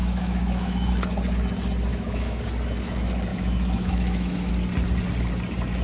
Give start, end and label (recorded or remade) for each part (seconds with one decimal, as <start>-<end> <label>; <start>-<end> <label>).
0.0-0.9 remade; 0.9-1.9 recorded; 1.9-2.4 remade; 2.4-3.3 recorded; 3.3-4.5 remade; 4.5-5.8 recorded